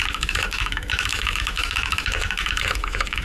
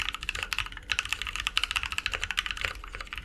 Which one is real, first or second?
second